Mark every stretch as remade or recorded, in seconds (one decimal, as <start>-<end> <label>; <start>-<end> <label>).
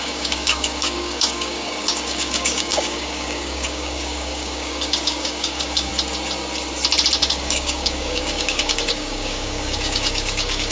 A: 0.0-5.9 remade; 5.9-7.2 recorded; 7.2-10.7 remade